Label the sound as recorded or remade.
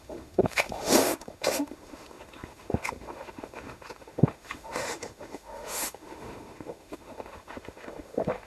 remade